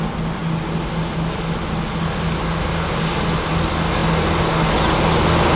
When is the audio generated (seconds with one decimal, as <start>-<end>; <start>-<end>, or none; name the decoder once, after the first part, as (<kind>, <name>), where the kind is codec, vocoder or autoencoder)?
none